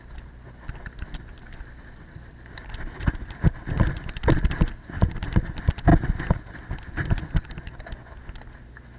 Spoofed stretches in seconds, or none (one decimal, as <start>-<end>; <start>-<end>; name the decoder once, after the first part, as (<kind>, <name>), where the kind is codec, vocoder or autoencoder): none